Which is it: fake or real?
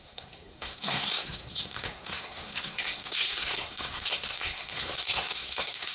fake